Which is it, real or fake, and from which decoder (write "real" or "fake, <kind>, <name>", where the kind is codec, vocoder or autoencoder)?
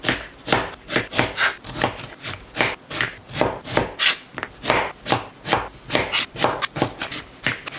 real